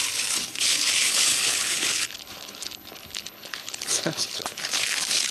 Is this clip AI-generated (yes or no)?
yes